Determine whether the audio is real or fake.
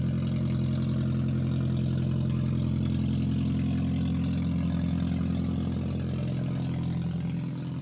real